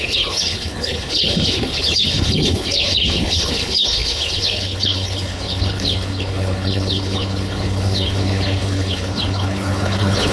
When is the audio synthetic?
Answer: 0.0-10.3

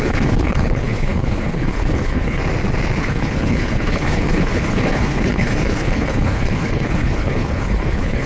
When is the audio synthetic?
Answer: 0.0-2.4; 3.0-8.3

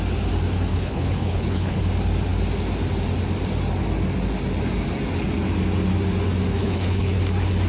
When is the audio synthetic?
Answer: 0.7-1.8; 6.6-7.2

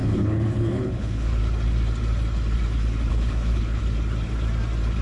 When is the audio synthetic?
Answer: 0.0-1.4; 3.1-3.8

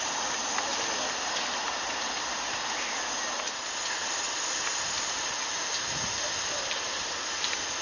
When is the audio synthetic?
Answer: none

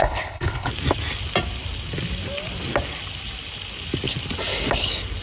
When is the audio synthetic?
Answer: 0.0-0.7

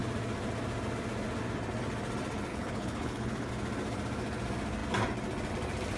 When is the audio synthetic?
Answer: 2.5-3.5